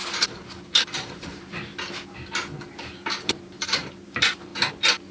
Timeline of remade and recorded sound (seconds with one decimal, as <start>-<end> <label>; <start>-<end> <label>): 0.0-1.7 remade; 1.7-2.7 recorded; 2.7-4.5 remade; 4.5-5.1 recorded